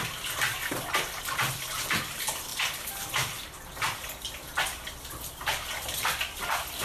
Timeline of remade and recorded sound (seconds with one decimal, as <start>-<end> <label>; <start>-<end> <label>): 0.0-6.8 remade